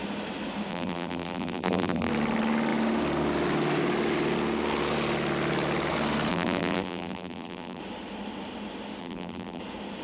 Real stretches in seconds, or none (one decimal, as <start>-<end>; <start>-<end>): 0.0-0.7; 2.1-6.3; 7.8-9.0; 9.6-10.0